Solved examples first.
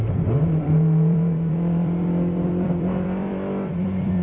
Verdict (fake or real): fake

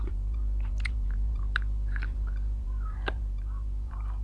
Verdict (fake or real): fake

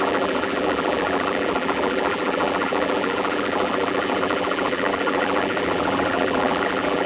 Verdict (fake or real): fake